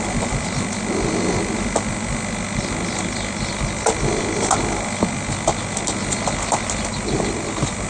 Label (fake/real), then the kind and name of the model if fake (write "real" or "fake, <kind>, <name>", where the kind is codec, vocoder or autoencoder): real